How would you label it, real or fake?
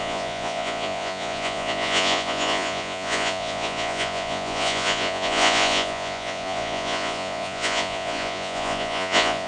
fake